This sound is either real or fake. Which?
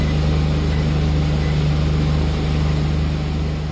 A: real